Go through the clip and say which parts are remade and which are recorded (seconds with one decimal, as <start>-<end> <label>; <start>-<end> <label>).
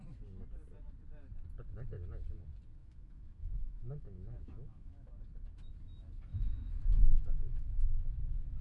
0.0-2.8 recorded; 2.8-5.1 remade; 5.1-6.3 recorded; 6.3-8.2 remade; 8.2-8.6 recorded